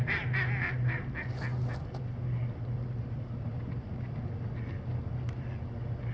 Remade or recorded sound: recorded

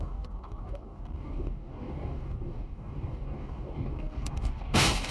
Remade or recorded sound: remade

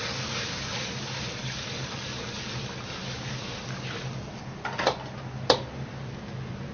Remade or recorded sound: recorded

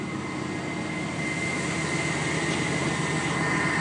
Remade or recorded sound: recorded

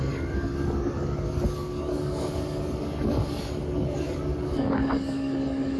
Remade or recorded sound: remade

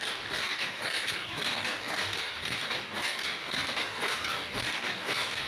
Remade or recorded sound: remade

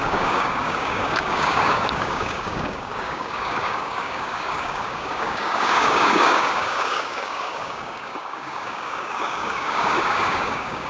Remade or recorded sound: remade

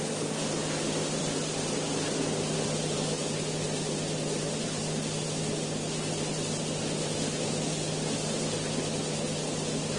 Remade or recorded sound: recorded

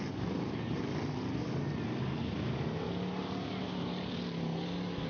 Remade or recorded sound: recorded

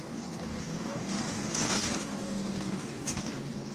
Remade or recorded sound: remade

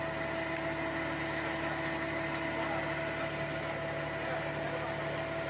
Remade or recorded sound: recorded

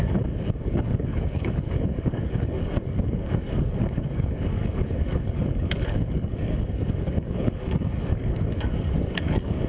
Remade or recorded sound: remade